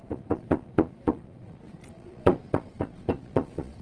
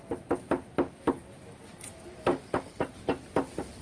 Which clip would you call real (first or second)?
second